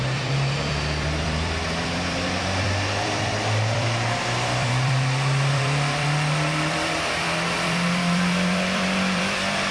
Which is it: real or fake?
fake